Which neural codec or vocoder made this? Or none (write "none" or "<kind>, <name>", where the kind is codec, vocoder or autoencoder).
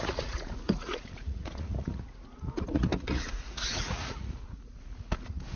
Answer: vocoder, Vocos